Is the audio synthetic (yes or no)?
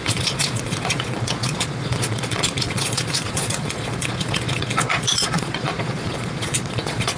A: yes